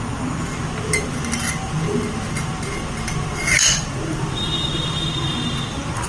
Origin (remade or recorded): recorded